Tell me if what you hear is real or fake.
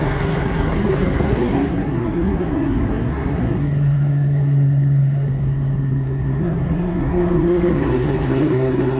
fake